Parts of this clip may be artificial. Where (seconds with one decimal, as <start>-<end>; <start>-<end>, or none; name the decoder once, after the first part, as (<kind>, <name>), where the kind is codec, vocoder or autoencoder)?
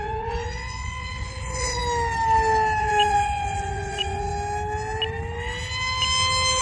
0.0-1.8 (vocoder, Vocos); 2.8-4.3